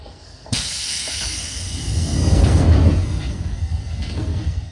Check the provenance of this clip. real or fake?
fake